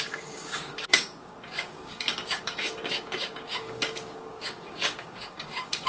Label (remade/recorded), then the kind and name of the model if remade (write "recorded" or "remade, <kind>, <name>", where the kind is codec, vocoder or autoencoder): remade, codec, DAC